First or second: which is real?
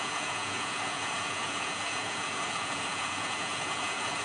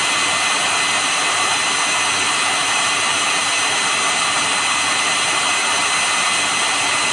second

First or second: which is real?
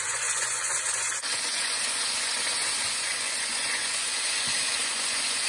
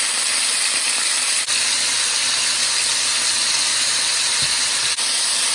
second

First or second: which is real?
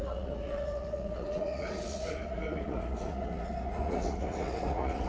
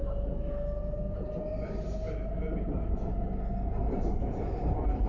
second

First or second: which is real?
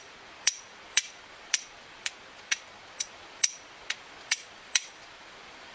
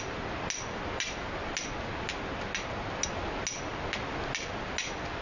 second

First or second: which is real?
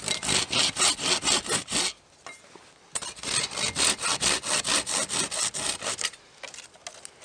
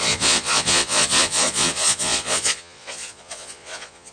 first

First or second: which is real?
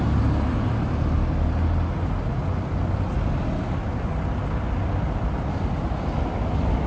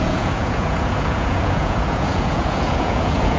first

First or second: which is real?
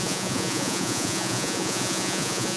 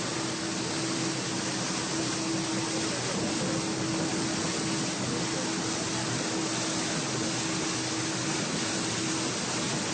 second